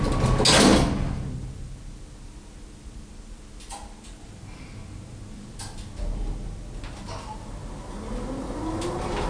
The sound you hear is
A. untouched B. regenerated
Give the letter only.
A